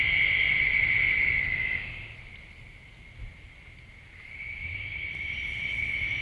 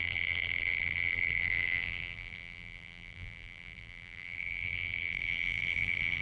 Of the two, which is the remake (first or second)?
second